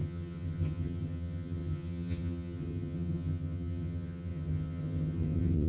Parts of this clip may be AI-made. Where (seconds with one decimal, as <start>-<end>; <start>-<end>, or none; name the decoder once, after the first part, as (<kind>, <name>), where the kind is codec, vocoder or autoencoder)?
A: 0.0-5.7 (vocoder, HiFi-GAN)